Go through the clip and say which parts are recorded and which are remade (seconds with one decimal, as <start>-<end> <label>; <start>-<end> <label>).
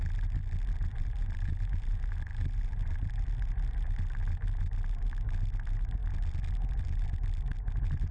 0.0-0.9 recorded; 0.9-3.1 remade; 3.1-8.1 recorded